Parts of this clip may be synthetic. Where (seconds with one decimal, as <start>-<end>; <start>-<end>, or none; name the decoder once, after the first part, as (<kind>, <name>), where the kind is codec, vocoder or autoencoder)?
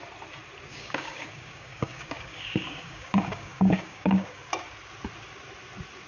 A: 0.7-4.4 (codec, DAC)